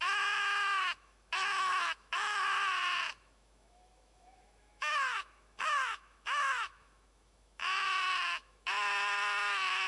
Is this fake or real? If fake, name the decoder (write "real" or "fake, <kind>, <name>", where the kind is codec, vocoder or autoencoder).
fake, autoencoder, DAC-VAE